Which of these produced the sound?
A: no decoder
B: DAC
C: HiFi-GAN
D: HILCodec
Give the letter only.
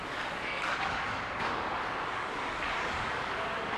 B